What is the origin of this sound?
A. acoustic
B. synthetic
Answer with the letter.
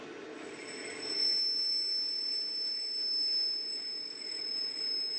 A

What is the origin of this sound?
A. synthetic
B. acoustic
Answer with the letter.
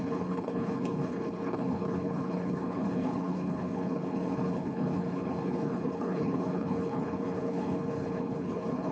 A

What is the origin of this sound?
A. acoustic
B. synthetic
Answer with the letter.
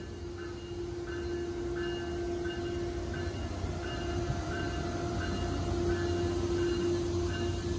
A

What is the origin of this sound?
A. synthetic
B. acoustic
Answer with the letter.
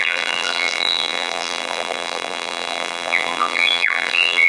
A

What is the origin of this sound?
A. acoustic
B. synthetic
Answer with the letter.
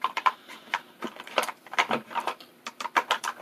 B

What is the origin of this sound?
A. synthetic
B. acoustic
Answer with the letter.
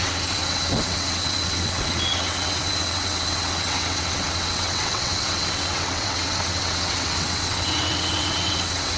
A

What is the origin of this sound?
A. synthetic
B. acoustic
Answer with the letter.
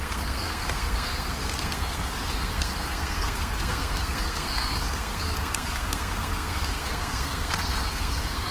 A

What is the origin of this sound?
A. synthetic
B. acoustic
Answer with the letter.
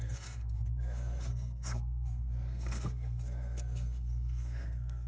A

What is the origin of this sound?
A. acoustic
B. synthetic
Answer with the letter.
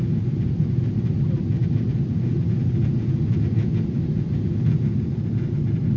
A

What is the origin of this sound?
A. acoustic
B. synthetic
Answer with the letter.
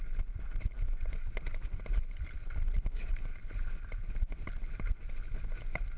A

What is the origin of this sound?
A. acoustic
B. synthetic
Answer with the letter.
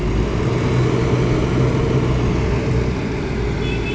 A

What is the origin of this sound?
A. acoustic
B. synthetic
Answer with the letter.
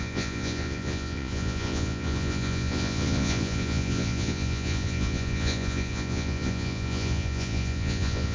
B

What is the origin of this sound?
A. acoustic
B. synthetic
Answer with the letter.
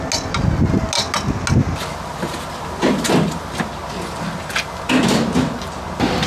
A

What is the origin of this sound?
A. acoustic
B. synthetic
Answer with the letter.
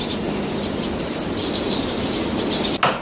A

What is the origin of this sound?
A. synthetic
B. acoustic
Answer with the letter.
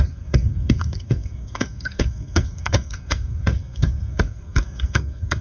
A